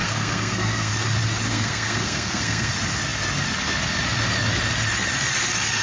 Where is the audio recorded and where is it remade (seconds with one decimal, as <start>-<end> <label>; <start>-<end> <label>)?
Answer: 0.0-0.9 remade; 0.9-1.5 recorded; 1.5-2.7 remade; 2.7-5.8 recorded